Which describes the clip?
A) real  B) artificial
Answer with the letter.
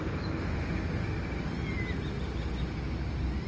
A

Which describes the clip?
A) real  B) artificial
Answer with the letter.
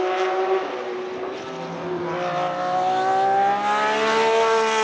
A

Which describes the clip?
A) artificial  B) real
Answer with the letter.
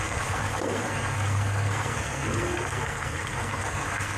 A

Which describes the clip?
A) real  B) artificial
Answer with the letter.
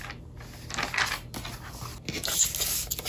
A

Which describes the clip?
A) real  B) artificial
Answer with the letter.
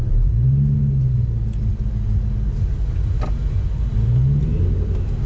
A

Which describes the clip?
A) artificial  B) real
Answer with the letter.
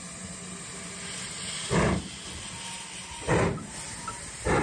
B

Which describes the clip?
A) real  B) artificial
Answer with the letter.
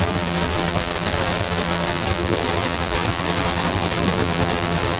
B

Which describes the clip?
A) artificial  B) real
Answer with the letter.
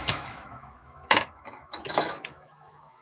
A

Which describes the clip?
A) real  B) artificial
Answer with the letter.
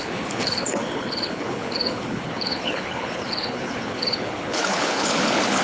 B